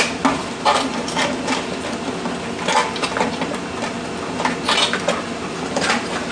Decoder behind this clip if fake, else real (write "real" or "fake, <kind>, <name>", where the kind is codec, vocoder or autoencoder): real